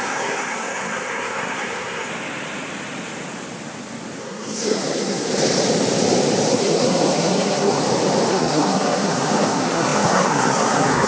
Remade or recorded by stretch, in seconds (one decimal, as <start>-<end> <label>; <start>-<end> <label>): 0.0-2.1 remade; 2.1-4.2 recorded; 4.2-5.3 remade; 5.3-6.5 recorded; 6.5-7.8 remade; 7.8-8.3 recorded; 8.3-11.1 remade